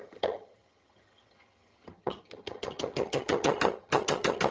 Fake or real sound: fake